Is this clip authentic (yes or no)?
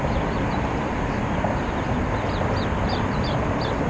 yes